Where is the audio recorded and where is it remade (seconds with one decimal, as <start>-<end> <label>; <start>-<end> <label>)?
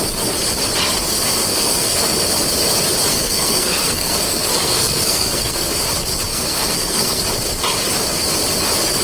0.0-1.5 recorded; 1.5-2.3 remade; 2.3-3.1 recorded; 3.1-5.8 remade; 5.8-6.3 recorded; 6.3-7.2 remade; 7.2-9.0 recorded